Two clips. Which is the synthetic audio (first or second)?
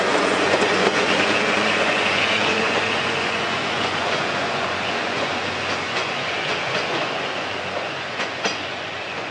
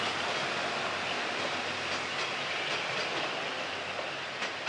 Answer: first